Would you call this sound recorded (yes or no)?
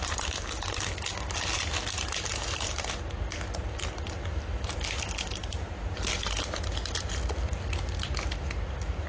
yes